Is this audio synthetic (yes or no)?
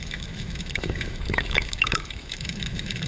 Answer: yes